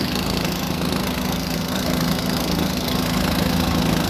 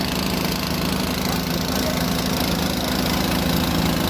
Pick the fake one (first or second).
first